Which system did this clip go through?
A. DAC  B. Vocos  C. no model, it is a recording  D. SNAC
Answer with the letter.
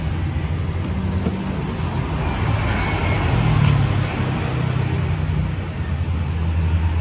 C